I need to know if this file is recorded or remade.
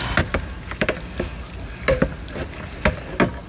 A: recorded